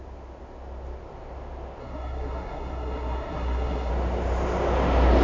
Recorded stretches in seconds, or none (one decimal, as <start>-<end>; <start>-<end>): 0.0-1.8; 3.9-5.2